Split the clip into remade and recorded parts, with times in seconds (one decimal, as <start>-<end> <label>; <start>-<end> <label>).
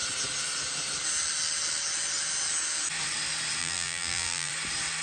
0.0-3.6 recorded; 3.6-4.5 remade; 4.5-5.0 recorded